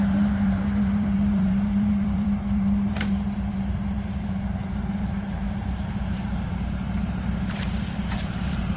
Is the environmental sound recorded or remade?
remade